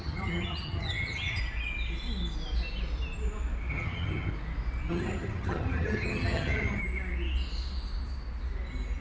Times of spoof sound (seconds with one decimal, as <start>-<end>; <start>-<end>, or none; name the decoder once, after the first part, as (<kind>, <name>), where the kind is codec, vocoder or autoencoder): 0.0-1.4 (vocoder, HiFi-GAN); 3.7-4.3; 4.9-6.8